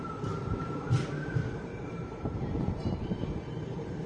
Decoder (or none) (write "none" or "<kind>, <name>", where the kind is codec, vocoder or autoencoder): vocoder, BigVGAN v2